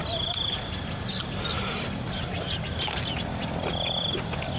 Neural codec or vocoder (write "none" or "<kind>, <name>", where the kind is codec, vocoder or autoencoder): none